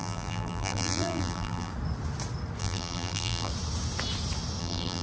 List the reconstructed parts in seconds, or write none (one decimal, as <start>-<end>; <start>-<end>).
0.0-1.7; 2.6-3.5; 4.6-5.0